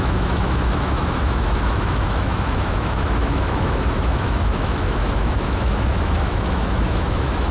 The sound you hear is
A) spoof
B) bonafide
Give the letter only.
A